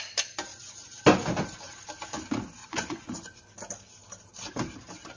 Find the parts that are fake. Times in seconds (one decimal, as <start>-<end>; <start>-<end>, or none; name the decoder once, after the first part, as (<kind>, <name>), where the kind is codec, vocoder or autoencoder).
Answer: 2.6-3.4 (vocoder, Vocos)

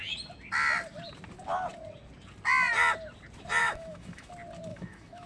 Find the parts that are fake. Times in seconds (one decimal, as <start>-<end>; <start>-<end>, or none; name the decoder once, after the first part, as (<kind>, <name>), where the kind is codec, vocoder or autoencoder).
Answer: 3.6-4.3 (autoencoder, DAC-VAE); 4.7-5.3

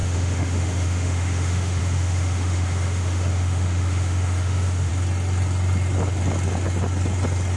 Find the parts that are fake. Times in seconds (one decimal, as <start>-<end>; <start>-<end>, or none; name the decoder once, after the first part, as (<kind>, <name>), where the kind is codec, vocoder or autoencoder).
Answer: 0.0-4.9 (autoencoder, DAC-VAE)